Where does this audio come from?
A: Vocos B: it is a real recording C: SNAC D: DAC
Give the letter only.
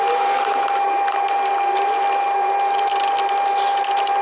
B